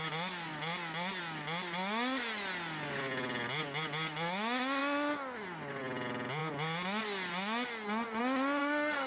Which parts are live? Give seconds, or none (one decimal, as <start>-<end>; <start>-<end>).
0.0-8.6